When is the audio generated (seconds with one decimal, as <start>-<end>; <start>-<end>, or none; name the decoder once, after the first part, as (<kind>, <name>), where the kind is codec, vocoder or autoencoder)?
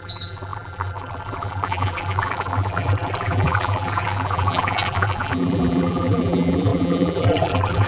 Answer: 0.0-7.9 (vocoder, BigVGAN v2)